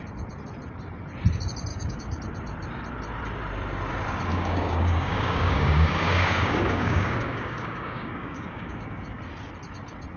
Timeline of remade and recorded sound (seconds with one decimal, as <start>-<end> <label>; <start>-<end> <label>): 0.0-1.7 recorded; 1.7-2.2 remade; 2.2-4.3 recorded; 4.3-9.2 remade; 9.2-10.2 recorded